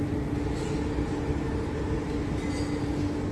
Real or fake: real